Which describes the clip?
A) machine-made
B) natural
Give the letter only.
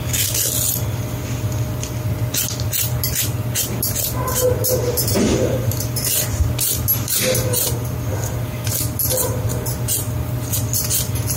B